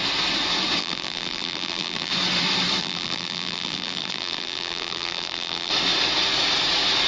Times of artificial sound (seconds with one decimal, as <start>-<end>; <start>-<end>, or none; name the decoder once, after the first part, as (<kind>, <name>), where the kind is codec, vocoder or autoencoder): 0.8-2.1 (vocoder, BigVGAN v2); 2.8-5.7